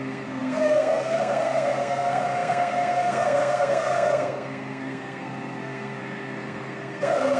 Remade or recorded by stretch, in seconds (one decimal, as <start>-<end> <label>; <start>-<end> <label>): 0.0-7.4 remade